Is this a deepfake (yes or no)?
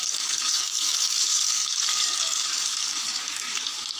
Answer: yes